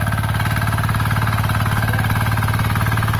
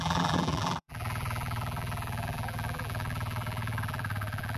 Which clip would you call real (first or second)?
first